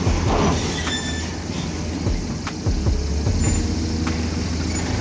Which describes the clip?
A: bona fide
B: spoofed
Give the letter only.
A